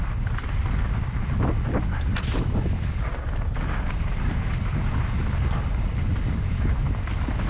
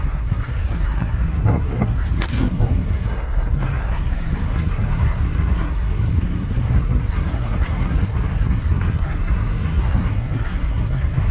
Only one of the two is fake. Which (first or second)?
second